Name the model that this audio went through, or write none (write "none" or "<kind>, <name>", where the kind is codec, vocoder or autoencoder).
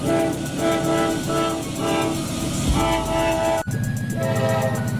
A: none